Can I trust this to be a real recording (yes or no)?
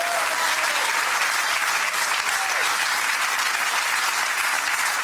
yes